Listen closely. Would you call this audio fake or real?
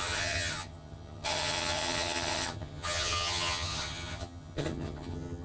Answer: fake